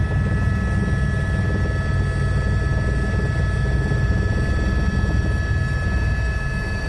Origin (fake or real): real